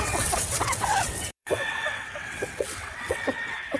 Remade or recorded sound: remade